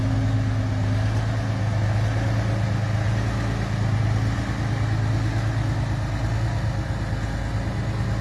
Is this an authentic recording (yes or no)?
yes